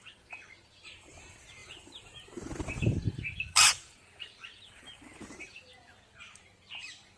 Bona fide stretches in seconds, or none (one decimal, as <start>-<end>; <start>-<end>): none